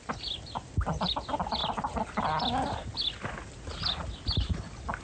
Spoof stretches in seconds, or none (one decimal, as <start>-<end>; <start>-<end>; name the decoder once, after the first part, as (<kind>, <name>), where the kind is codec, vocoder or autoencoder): none